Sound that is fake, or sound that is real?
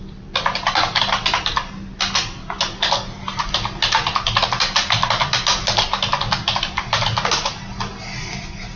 real